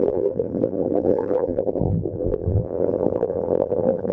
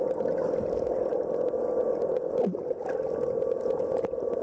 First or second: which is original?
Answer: second